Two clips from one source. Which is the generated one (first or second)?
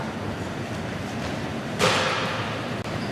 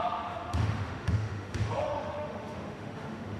second